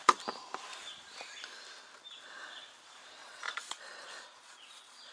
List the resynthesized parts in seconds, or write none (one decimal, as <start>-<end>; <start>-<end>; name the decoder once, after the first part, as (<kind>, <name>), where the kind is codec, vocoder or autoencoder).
3.2-5.1 (vocoder, Vocos)